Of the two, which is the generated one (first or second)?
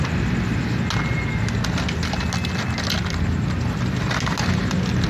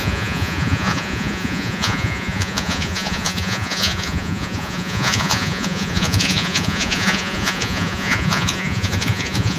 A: second